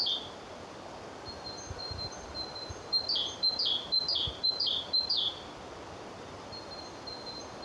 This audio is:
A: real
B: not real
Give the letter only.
B